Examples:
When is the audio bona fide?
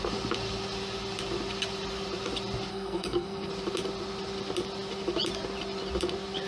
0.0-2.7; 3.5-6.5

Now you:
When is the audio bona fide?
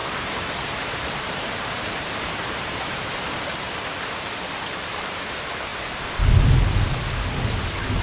3.9-8.0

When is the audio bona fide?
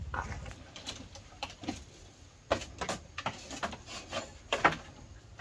0.0-5.4